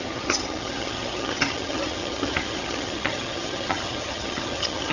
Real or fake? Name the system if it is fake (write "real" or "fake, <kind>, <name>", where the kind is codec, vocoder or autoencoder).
fake, vocoder, HiFi-GAN